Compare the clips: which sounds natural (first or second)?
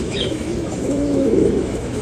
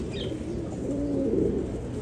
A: second